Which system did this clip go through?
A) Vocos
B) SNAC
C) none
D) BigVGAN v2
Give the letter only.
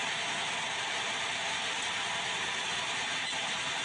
C